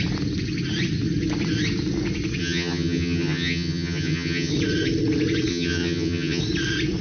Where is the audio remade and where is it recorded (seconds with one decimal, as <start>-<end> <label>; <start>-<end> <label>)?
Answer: 0.0-2.4 recorded; 2.4-4.5 remade; 4.5-5.5 recorded; 5.5-6.4 remade; 6.4-7.0 recorded